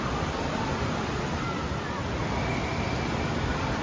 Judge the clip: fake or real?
real